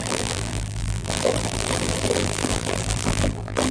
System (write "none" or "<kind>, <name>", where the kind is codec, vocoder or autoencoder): vocoder, BigVGAN v2